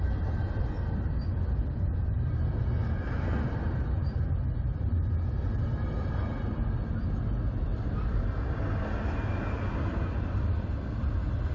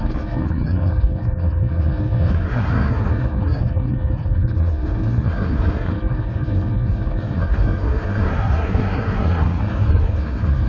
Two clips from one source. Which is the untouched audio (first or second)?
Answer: first